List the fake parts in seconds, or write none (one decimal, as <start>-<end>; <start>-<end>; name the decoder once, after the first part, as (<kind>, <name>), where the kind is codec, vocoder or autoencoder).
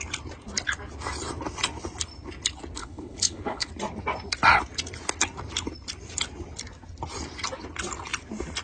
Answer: 2.8-3.7 (codec, HILCodec)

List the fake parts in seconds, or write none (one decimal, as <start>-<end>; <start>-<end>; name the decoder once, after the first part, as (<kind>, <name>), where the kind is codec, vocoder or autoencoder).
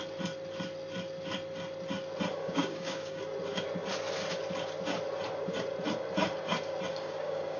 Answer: 2.4-3.2 (codec, DAC); 6.9-7.6